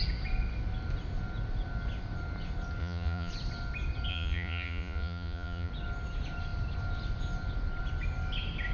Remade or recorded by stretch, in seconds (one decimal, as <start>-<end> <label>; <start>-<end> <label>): 0.0-2.8 recorded; 2.8-3.3 remade; 3.3-4.1 recorded; 4.1-5.7 remade; 5.7-8.7 recorded